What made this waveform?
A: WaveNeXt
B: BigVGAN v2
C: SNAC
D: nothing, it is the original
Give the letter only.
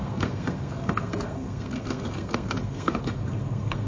C